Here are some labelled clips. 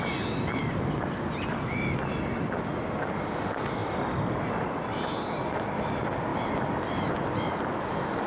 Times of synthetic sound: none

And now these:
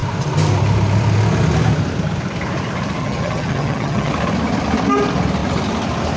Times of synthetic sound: 3.0-4.1 (vocoder, HiFi-GAN)

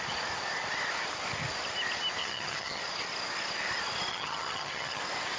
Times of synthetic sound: 2.2-2.8 (vocoder, HiFi-GAN); 4.1-5.0

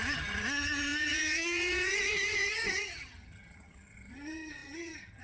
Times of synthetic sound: 0.0-5.2 (vocoder, HiFi-GAN)

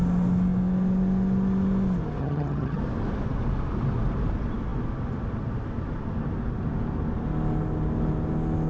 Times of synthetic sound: 2.2-2.8 (vocoder, HiFi-GAN)

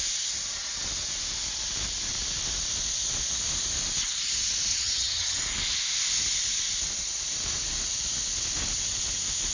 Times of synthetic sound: 4.7-5.4 (vocoder, HiFi-GAN)

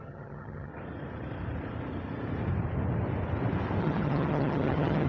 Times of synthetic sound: 0.0-0.7 (vocoder, HiFi-GAN); 3.8-5.1